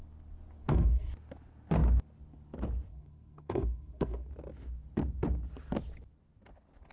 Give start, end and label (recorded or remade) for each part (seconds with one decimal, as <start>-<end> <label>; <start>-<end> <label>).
0.0-0.6 recorded; 0.6-1.1 remade; 1.1-2.9 recorded; 2.9-4.3 remade; 4.3-6.9 recorded